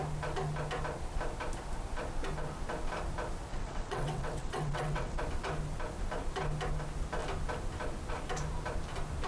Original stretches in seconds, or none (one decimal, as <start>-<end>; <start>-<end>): 0.0-3.5; 5.2-9.3